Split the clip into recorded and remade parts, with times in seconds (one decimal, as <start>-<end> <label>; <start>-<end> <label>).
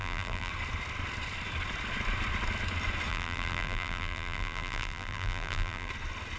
0.0-0.5 remade; 0.5-3.1 recorded; 3.1-5.9 remade; 5.9-6.4 recorded